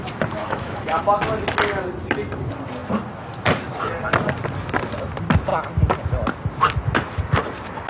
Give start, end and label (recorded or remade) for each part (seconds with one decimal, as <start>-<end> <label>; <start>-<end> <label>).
0.0-0.4 recorded; 0.4-1.0 remade; 1.0-7.9 recorded